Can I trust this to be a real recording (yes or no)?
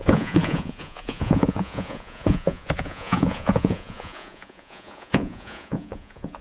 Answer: no